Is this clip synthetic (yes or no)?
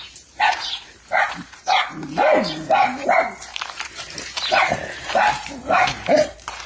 yes